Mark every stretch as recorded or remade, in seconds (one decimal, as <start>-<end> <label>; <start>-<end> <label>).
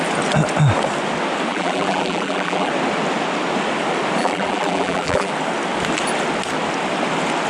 0.0-1.5 recorded; 1.5-2.7 remade; 2.7-4.2 recorded; 4.2-5.3 remade; 5.3-7.5 recorded